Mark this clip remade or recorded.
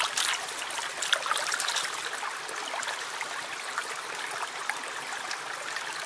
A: recorded